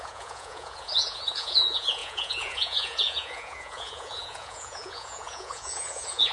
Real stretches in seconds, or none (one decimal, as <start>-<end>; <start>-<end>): none